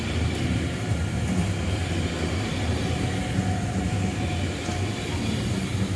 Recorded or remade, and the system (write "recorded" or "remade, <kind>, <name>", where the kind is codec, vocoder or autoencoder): recorded